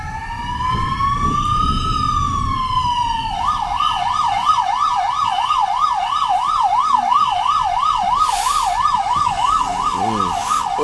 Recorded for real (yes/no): yes